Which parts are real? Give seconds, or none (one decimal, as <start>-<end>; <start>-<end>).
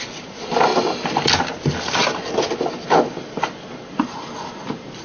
0.0-5.0